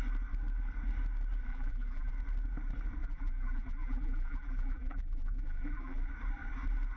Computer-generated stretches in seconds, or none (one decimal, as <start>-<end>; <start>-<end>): 1.5-2.1; 3.0-6.1

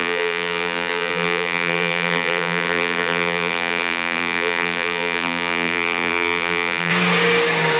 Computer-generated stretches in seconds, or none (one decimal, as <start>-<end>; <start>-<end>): 0.0-6.9

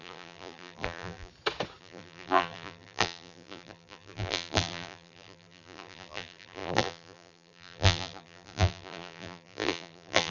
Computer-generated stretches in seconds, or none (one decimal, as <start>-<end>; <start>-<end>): 0.0-1.3; 1.8-10.3